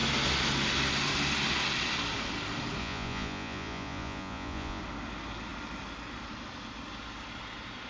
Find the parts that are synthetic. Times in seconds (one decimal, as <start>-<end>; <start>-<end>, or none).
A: 2.8-4.8